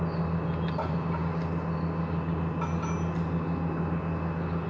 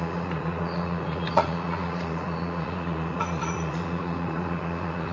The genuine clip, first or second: first